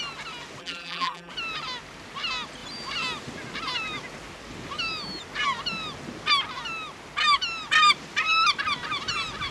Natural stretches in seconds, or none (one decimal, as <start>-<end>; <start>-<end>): 0.0-0.6; 1.3-9.5